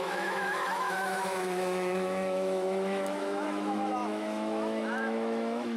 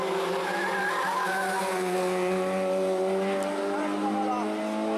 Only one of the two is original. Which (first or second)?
second